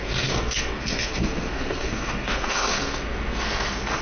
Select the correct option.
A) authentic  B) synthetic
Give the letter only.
B